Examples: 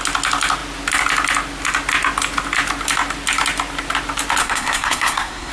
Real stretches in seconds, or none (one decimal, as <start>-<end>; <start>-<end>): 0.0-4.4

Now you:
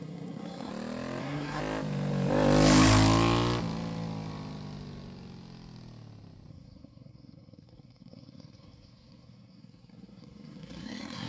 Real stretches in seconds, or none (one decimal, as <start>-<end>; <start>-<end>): 0.7-1.2; 1.6-6.5

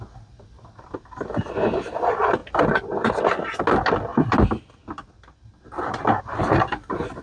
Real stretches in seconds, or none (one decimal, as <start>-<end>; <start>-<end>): 0.0-7.2